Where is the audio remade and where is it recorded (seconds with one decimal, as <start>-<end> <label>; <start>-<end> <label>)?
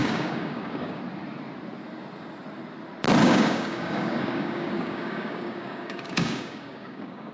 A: 0.0-1.0 remade; 1.0-3.2 recorded; 3.2-7.3 remade